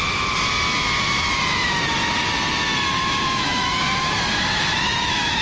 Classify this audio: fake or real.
fake